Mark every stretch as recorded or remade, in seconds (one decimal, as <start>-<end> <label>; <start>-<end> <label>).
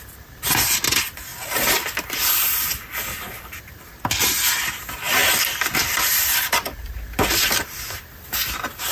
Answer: 0.0-1.3 recorded; 1.3-2.5 remade; 2.5-5.2 recorded; 5.2-7.8 remade; 7.8-8.9 recorded